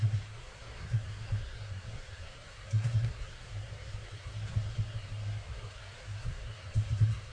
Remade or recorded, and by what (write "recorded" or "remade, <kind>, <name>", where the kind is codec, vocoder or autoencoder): remade, codec, SNAC